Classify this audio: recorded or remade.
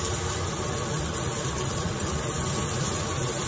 recorded